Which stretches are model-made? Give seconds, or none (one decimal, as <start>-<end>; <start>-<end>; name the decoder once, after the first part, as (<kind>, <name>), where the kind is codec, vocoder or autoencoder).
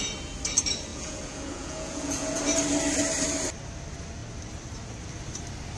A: 0.9-2.4 (vocoder, Vocos)